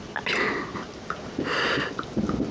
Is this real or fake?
real